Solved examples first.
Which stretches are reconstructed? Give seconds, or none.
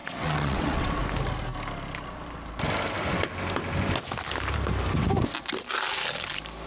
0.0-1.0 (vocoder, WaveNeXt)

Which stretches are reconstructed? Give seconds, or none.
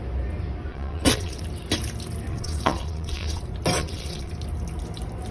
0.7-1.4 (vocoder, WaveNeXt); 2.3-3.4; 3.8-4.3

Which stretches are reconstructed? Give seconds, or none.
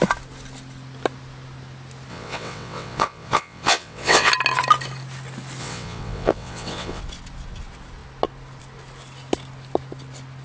2.1-4.3 (vocoder, WaveNeXt); 5.6-7.0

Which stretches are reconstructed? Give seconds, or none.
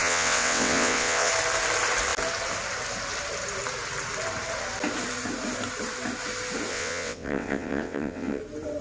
0.0-1.3 (vocoder, WaveNeXt); 6.7-8.4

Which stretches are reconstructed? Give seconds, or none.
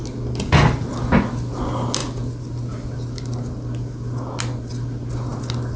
none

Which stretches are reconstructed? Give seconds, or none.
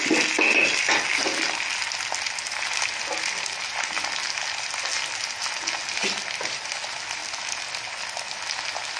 none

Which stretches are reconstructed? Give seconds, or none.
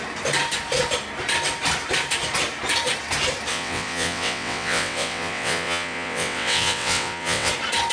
3.5-7.5 (vocoder, WaveNeXt)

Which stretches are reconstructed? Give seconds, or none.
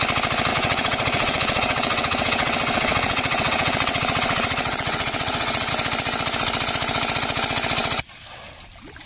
0.5-5.7 (vocoder, WaveNeXt)